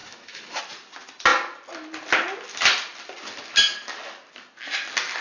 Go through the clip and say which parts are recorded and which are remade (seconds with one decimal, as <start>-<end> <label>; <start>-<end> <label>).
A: 0.0-0.6 remade; 0.6-5.2 recorded